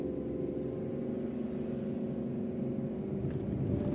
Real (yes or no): yes